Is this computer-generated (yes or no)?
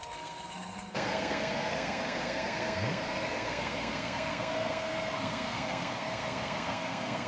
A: yes